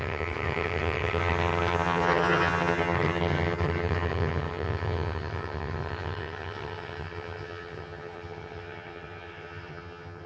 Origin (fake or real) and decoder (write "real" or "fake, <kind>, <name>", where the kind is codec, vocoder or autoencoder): fake, vocoder, HiFi-GAN